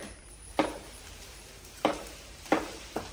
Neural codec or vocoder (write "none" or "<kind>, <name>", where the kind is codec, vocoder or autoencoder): vocoder, BigVGAN v2